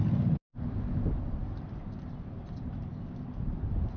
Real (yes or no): no